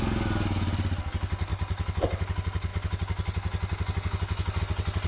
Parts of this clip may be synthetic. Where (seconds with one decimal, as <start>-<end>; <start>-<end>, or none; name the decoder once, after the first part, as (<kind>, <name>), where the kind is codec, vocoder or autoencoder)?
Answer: none